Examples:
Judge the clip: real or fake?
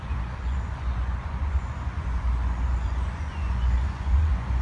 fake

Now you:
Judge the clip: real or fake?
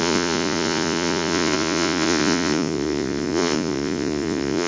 fake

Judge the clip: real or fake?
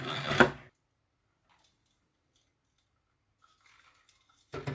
real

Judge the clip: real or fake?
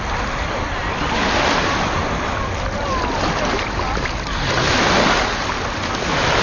real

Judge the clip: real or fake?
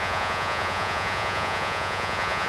fake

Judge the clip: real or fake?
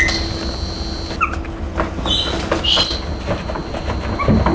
real